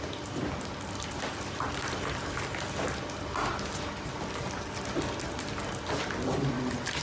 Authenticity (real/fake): real